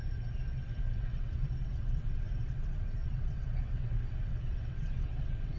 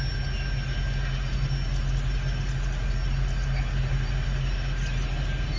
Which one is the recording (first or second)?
second